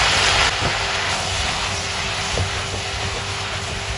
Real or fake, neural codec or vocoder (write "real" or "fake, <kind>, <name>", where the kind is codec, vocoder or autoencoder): real